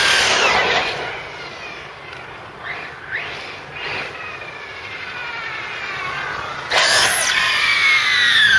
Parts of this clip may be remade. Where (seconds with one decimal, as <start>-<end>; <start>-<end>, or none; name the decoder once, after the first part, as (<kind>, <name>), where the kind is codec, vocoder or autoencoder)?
0.6-1.2 (vocoder, Vocos)